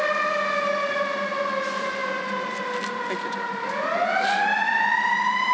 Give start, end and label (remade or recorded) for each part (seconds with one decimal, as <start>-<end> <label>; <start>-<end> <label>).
0.0-5.5 recorded